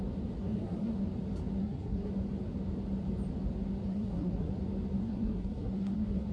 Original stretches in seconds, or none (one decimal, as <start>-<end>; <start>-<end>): 0.0-0.4; 1.0-1.6; 2.1-3.9; 4.5-5.0

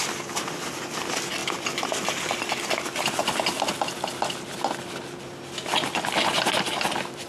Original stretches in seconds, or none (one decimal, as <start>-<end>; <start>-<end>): 0.0-7.3